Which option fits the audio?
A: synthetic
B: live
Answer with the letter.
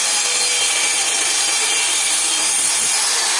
B